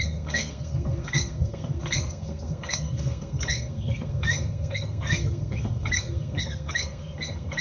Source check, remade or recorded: remade